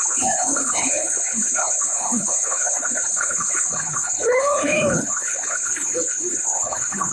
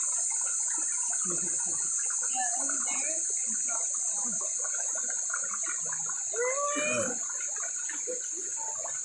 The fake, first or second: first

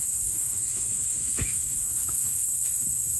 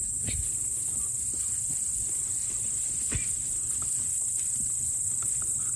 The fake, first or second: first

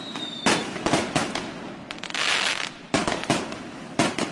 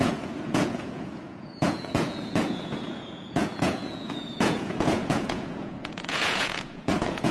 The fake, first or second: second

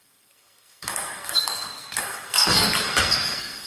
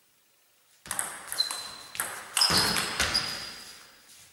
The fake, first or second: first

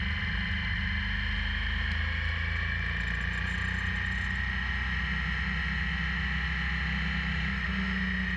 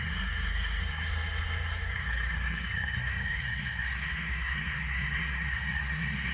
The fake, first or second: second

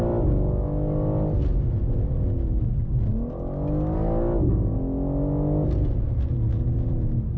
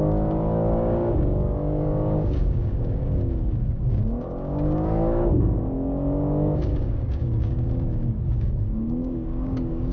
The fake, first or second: second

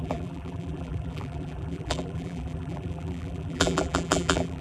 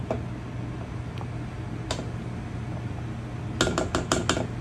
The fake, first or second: first